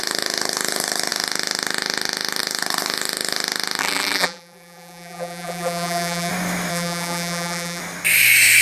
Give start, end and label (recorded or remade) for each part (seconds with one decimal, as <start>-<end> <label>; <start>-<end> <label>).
0.0-3.8 recorded; 3.8-6.3 remade; 6.3-6.7 recorded; 6.7-7.8 remade; 7.8-8.6 recorded